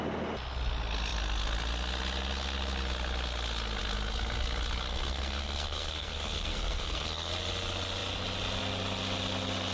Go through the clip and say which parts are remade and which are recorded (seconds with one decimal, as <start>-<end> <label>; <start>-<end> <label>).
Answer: 0.0-4.9 recorded; 4.9-7.3 remade; 7.3-9.7 recorded